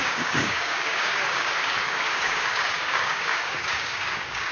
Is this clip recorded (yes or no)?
no